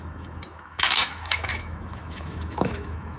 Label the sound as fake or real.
fake